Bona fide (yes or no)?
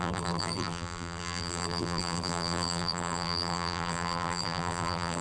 no